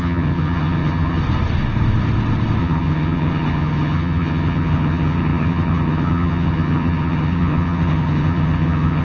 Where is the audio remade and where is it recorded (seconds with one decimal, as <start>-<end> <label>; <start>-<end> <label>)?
0.0-1.2 remade; 1.2-2.6 recorded; 2.6-9.0 remade